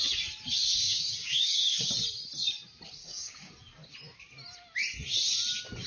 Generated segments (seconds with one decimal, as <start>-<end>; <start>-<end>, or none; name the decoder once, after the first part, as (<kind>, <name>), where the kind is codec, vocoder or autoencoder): 0.6-1.8 (codec, DAC); 3.0-3.5